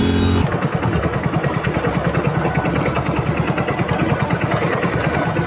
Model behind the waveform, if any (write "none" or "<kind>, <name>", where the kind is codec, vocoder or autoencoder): none